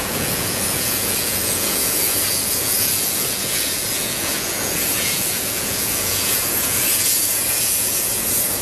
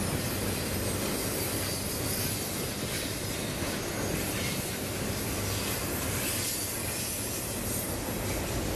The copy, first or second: first